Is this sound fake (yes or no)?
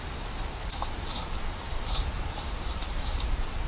yes